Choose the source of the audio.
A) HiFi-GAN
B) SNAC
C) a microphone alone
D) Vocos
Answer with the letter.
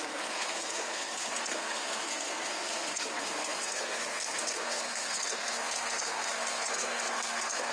B